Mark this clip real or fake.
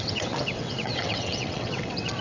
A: fake